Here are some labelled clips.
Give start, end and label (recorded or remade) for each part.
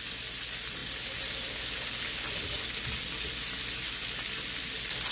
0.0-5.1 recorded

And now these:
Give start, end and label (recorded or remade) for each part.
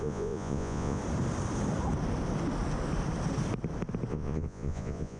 0.0-1.0 remade; 1.0-4.1 recorded; 4.1-5.2 remade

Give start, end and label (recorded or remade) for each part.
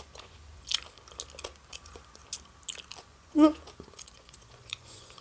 0.0-0.7 remade; 0.7-1.7 recorded; 1.7-2.2 remade; 2.2-3.0 recorded; 3.0-5.2 remade